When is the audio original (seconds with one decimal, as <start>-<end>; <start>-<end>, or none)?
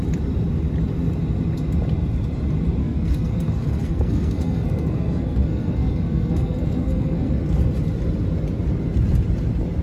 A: 0.0-2.8; 7.4-9.8